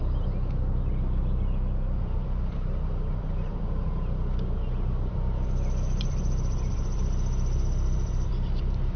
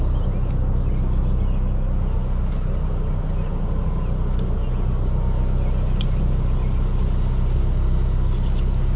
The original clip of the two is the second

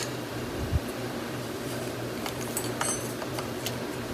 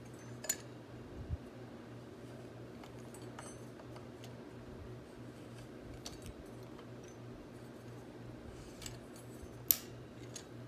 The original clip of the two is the second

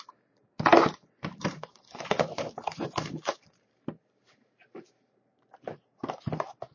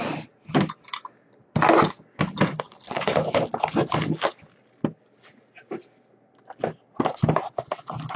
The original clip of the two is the second